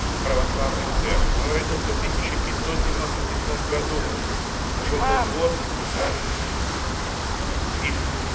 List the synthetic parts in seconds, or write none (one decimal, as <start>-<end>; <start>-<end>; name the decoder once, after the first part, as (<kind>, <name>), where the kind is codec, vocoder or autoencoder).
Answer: 5.8-6.6 (autoencoder, DAC-VAE)